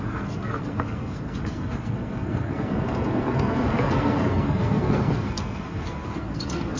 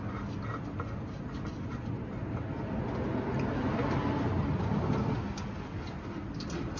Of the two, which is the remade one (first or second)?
first